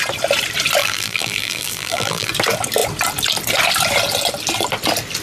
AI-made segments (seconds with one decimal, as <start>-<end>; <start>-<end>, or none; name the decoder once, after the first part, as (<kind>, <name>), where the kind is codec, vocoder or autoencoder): 0.8-2.3 (vocoder, BigVGAN v2)